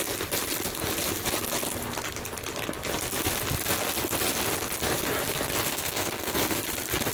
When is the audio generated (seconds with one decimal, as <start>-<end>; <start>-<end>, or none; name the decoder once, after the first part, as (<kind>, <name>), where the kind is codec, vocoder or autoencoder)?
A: 5.7-6.5 (codec, SNAC)